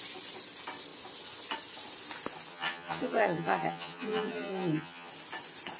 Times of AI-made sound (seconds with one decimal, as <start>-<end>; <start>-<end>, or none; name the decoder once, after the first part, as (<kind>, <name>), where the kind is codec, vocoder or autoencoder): 2.5-5.1 (vocoder, HiFi-GAN)